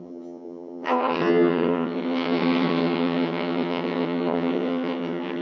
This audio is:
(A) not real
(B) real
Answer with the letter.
A